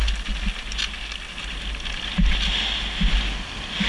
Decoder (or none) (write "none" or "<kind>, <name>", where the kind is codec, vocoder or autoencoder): none